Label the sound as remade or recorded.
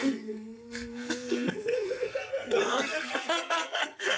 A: remade